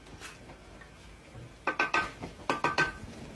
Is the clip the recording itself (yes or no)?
yes